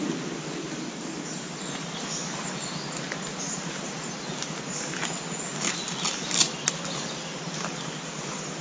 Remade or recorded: recorded